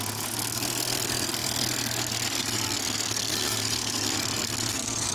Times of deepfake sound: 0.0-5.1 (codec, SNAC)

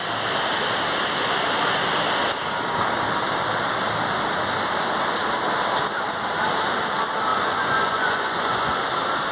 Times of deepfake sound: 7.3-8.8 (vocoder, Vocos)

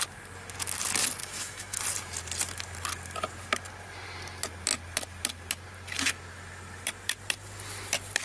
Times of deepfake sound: 1.2-1.8 (autoencoder, DAC-VAE)

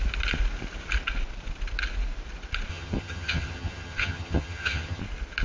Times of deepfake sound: 2.7-5.0 (vocoder, HiFi-GAN)

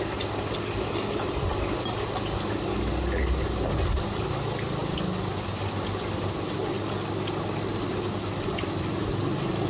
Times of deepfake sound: none